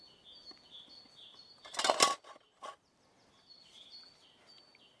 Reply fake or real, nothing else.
real